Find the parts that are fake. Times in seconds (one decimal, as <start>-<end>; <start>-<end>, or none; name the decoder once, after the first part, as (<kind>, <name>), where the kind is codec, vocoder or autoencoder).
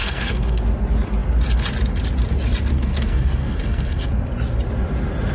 0.0-0.6 (codec, SNAC); 2.7-4.1